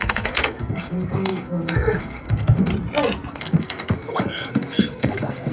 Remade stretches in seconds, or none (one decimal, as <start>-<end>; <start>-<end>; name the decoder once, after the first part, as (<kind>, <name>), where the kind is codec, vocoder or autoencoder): 0.0-2.7 (codec, SNAC); 3.3-5.5